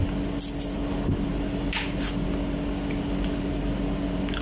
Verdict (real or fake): real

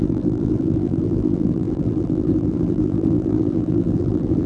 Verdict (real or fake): fake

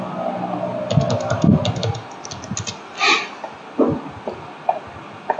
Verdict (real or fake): real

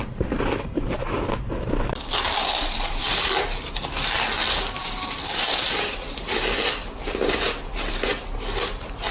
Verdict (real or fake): real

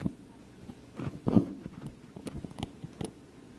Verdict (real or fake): fake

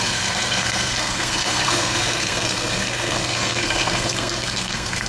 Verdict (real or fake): fake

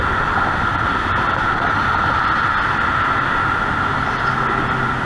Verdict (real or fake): real